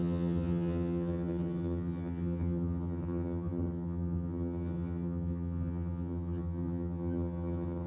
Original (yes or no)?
no